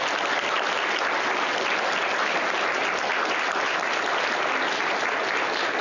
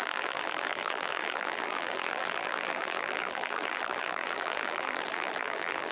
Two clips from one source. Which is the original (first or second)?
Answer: first